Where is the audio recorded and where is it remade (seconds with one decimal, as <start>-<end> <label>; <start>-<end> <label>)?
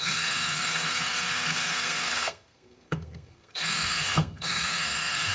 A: 0.0-5.3 remade